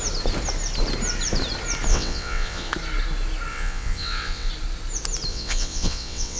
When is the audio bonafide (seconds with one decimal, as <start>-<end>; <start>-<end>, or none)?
0.0-1.9; 2.7-3.5; 4.5-5.3